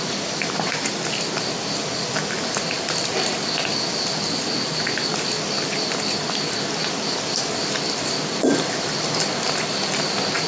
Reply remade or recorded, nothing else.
recorded